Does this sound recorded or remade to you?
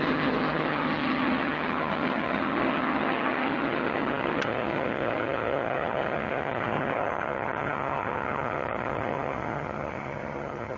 remade